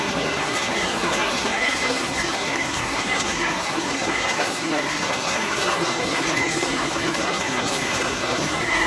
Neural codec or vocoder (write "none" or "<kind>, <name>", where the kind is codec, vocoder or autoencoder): codec, SNAC